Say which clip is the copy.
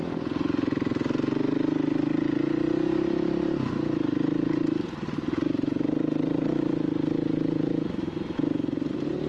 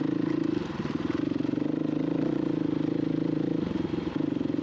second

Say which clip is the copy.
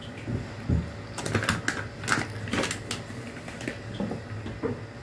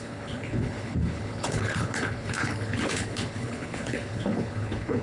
second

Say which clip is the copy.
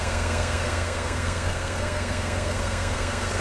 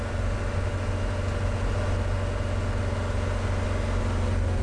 first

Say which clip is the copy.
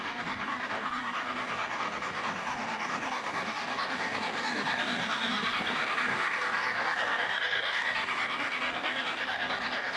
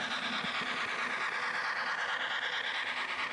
first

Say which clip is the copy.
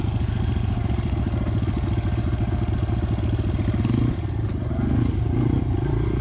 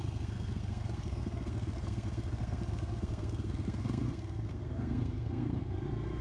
second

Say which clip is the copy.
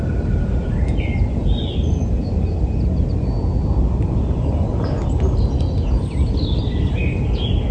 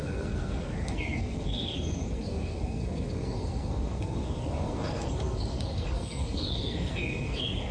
second